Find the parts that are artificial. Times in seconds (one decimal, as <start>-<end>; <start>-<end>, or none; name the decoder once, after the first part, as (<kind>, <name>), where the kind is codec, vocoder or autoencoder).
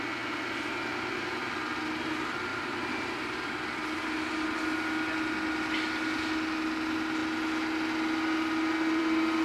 2.5-3.1 (vocoder, BigVGAN v2)